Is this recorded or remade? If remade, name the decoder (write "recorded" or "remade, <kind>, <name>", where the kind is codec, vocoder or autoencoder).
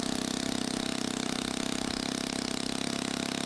recorded